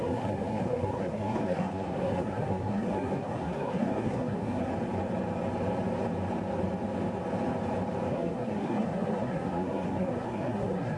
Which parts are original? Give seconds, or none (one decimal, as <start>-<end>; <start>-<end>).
4.7-8.1